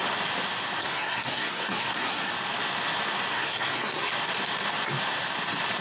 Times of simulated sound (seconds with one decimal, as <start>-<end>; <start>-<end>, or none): 0.8-2.3; 3.3-4.1